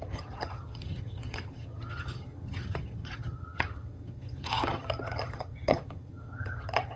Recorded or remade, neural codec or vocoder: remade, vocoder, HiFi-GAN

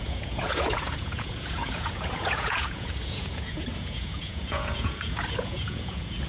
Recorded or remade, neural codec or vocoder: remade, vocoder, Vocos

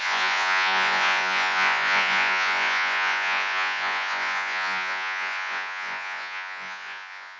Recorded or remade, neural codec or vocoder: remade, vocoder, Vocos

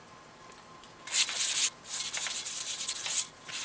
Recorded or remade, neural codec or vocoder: recorded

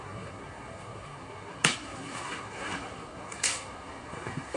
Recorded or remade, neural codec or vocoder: remade, codec, SNAC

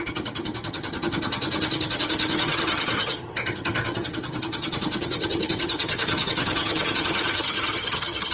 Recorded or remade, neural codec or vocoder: remade, vocoder, HiFi-GAN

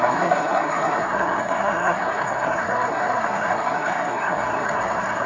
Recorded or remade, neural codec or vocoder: remade, codec, SNAC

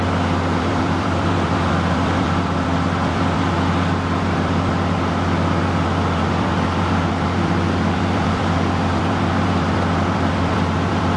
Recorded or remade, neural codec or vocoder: remade, vocoder, BigVGAN v2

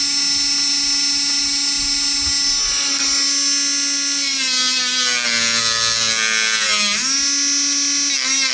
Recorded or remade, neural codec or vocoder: recorded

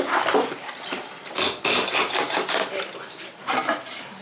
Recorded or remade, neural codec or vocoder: recorded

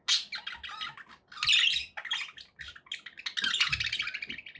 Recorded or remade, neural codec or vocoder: recorded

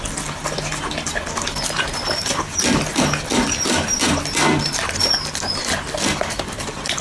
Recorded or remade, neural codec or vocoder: recorded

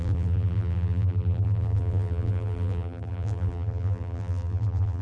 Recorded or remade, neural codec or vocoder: remade, vocoder, BigVGAN v2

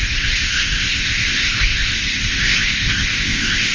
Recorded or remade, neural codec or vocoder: remade, codec, ZipCodec